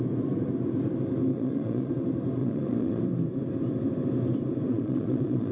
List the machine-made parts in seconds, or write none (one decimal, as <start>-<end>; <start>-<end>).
1.3-1.9; 2.4-3.0; 4.7-5.5